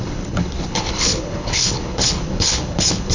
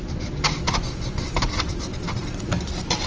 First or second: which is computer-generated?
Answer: first